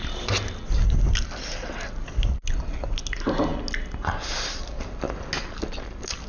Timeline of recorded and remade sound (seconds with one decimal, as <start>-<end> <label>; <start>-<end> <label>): 0.0-6.3 recorded